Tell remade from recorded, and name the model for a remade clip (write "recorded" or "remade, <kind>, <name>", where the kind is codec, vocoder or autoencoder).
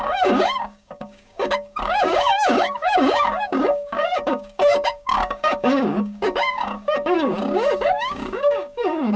remade, codec, DAC